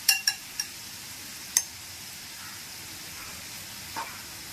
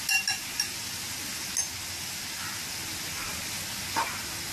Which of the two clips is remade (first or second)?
first